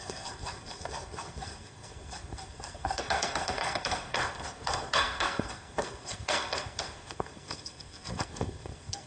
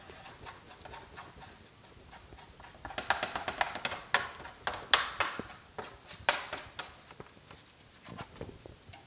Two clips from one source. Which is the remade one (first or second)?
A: first